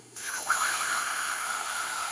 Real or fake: fake